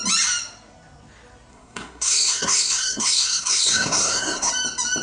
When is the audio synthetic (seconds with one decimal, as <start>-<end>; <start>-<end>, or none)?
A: 1.5-4.5